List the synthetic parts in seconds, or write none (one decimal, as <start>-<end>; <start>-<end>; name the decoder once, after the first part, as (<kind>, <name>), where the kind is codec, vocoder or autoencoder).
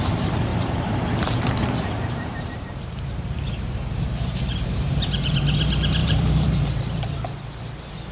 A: 0.5-4.9 (vocoder, BigVGAN v2); 6.0-7.2